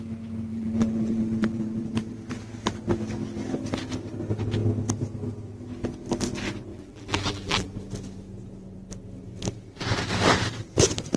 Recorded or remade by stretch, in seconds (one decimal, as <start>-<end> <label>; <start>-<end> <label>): 0.0-0.5 recorded; 0.5-1.8 remade; 1.8-6.7 recorded; 6.7-7.7 remade; 7.7-11.2 recorded